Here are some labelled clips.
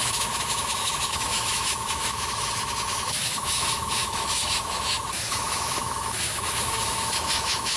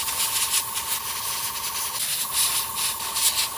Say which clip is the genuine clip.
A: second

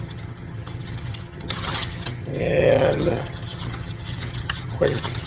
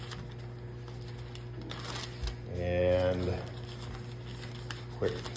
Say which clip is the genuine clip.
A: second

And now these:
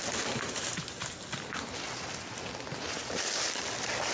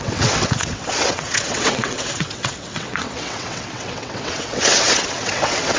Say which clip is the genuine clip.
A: first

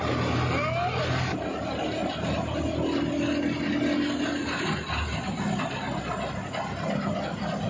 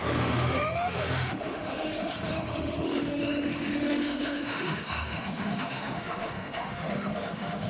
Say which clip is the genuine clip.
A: first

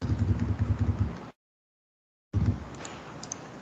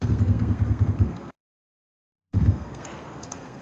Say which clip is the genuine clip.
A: first